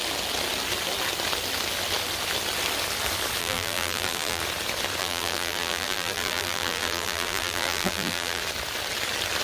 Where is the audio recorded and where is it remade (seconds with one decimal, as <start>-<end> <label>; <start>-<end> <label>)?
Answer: 0.0-3.4 recorded; 3.4-4.4 remade; 4.4-5.0 recorded; 5.0-8.4 remade; 8.4-9.4 recorded